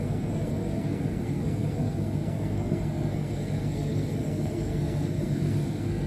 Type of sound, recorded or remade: remade